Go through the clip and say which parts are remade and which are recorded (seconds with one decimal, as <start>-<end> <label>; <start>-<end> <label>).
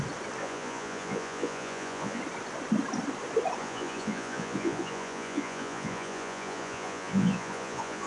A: 0.0-0.4 recorded; 0.4-2.2 remade; 2.2-3.6 recorded; 3.6-8.1 remade